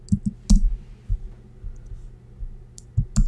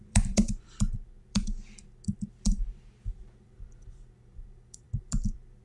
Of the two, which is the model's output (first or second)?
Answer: second